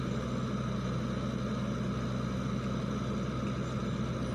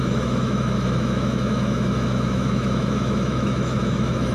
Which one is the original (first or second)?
first